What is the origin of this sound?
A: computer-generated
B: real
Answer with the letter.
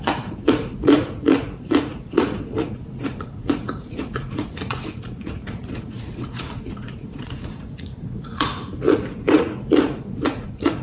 A